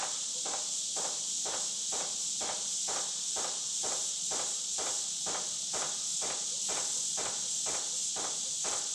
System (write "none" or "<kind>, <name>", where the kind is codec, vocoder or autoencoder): none